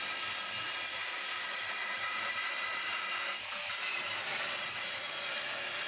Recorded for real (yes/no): yes